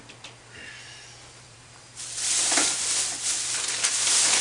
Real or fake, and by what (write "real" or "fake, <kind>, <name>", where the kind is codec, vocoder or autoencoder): fake, vocoder, BigVGAN v2